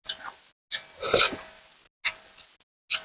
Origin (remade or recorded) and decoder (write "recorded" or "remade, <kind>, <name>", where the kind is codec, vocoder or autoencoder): recorded